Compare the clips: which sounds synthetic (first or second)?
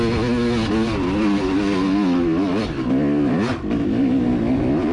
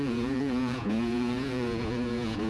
second